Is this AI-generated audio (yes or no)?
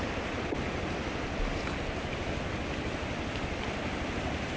no